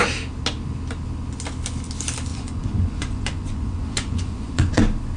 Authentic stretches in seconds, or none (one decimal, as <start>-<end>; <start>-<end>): 0.0-2.3; 4.8-5.2